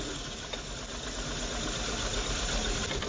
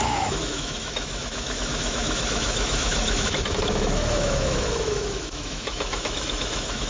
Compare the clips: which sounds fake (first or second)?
second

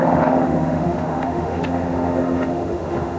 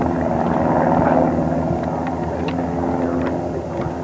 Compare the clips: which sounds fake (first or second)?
first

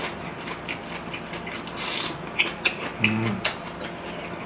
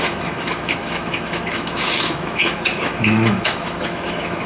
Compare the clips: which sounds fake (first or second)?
second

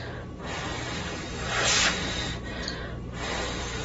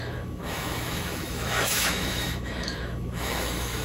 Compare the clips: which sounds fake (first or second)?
second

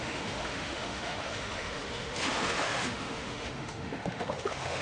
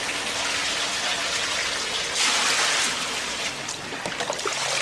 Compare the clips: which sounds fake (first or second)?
first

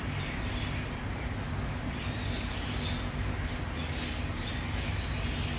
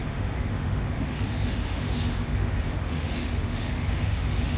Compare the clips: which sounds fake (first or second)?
second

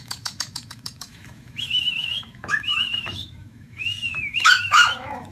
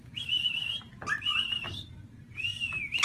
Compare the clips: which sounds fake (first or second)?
first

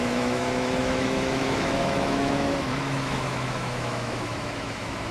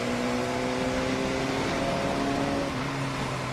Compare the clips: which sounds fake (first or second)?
first